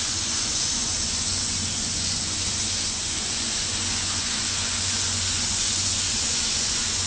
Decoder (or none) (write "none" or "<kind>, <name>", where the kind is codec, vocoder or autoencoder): vocoder, Vocos